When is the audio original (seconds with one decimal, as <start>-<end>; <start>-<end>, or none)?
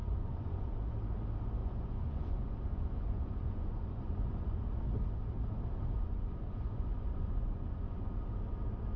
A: 0.6-1.6; 4.6-6.0; 8.1-9.0